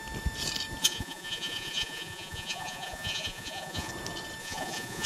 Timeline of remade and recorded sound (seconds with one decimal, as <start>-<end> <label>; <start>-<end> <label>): 0.0-0.8 recorded; 0.8-3.9 remade; 3.9-4.4 recorded; 4.4-5.1 remade